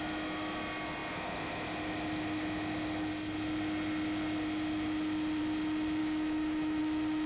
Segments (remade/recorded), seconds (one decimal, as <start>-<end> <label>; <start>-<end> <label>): 0.0-6.0 recorded; 6.0-6.8 remade; 6.8-7.3 recorded